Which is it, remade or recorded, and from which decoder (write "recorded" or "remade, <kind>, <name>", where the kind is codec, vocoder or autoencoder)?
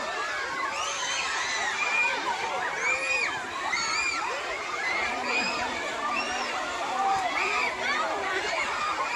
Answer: remade, vocoder, BigVGAN v2